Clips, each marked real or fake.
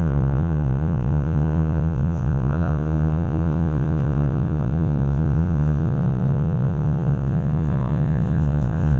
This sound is fake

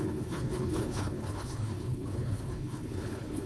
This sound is fake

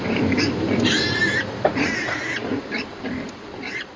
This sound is fake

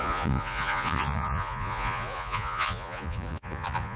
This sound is fake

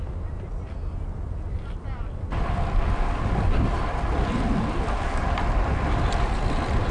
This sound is real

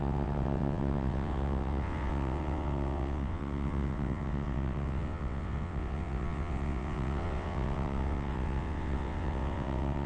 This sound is fake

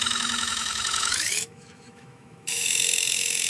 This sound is fake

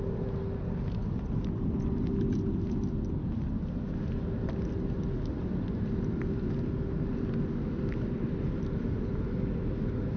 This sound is real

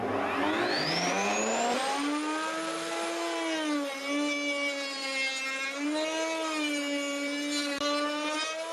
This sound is real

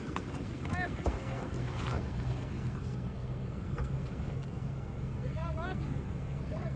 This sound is fake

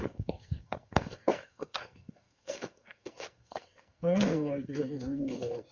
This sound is fake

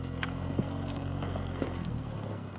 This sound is fake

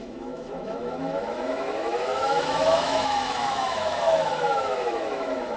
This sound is fake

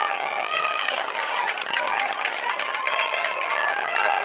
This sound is fake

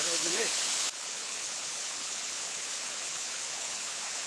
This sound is fake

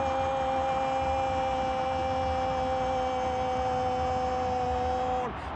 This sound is real